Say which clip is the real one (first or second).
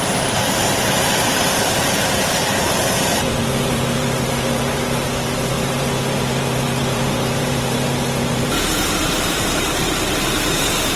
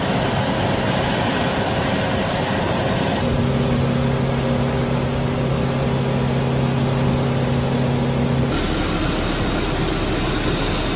second